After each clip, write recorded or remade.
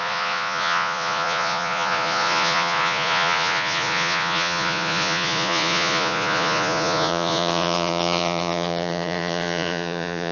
remade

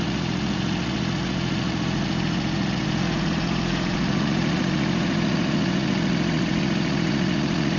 remade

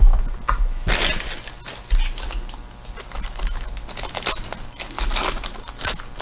recorded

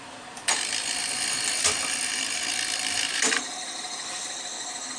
recorded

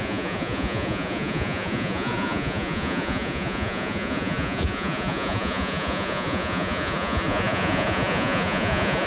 remade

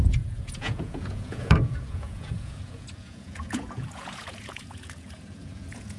remade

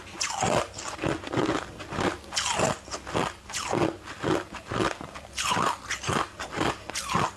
recorded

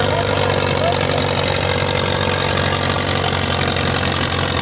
recorded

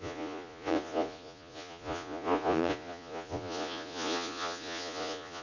remade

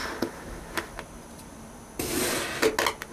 recorded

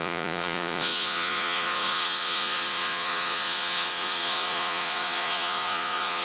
remade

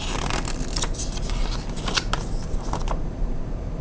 recorded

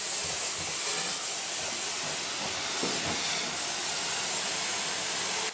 recorded